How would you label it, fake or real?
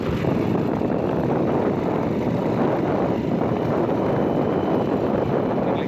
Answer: real